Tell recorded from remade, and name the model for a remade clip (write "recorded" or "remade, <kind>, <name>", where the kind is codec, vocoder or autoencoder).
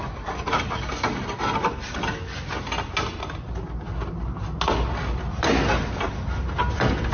recorded